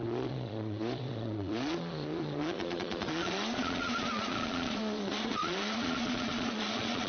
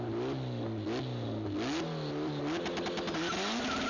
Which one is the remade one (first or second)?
first